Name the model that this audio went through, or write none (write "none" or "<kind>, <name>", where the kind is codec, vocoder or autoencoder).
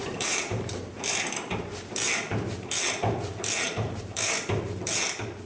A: vocoder, BigVGAN v2